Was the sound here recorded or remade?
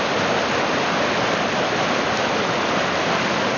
recorded